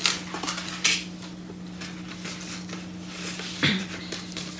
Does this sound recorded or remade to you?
recorded